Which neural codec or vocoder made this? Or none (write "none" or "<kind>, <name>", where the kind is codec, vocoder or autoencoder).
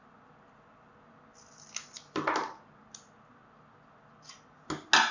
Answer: none